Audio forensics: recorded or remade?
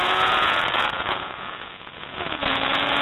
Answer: remade